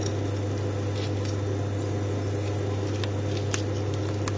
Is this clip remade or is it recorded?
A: recorded